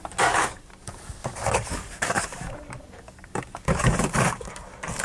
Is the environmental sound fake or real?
fake